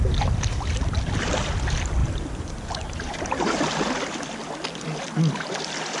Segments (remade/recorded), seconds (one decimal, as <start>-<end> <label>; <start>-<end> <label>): 0.0-2.0 recorded; 2.0-3.6 remade; 3.6-6.0 recorded